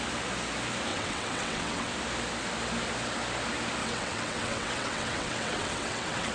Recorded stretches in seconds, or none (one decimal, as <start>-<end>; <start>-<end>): 0.0-0.9; 1.9-3.8

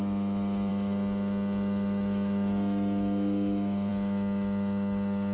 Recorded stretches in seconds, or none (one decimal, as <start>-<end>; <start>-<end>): none

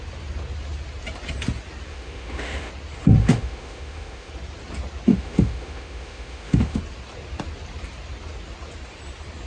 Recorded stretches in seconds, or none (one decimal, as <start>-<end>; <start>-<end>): 0.0-1.9; 2.7-3.2; 4.3-5.1; 6.8-9.5

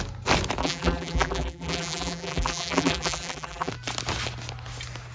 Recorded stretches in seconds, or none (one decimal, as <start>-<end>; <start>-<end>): 0.0-0.6; 3.7-5.1

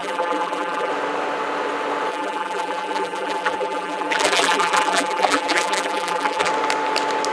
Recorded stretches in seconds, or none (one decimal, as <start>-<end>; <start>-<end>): 0.9-2.1; 6.5-7.3

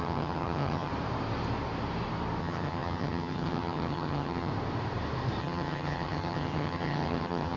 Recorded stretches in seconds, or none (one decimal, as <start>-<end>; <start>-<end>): 0.9-2.4; 4.5-5.4

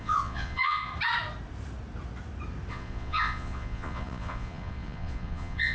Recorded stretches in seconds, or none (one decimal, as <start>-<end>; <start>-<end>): 0.9-2.7

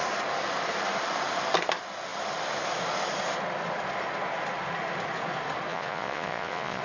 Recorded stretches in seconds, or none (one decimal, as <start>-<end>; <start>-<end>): 0.0-5.7